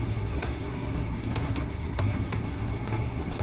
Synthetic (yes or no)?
yes